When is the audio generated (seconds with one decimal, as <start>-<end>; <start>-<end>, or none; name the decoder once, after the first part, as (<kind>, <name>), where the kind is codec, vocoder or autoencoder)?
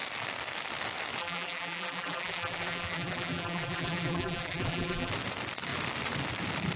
1.2-5.1 (vocoder, BigVGAN v2)